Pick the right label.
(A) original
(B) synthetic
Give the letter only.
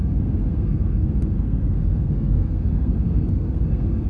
B